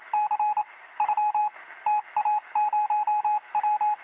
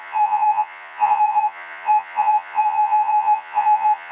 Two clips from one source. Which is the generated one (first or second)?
second